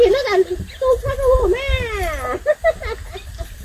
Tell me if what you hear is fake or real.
real